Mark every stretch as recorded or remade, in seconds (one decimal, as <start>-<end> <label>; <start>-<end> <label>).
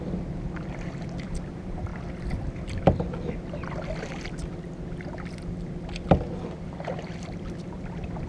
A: 0.0-1.9 remade; 1.9-6.4 recorded; 6.4-8.3 remade